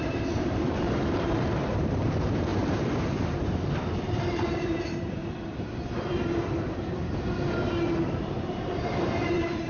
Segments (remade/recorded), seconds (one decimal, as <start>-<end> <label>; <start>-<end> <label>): 0.0-5.2 remade; 5.2-8.1 recorded; 8.1-9.7 remade